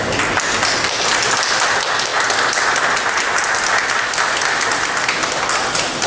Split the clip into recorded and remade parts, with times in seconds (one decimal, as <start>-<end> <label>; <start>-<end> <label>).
0.0-6.1 recorded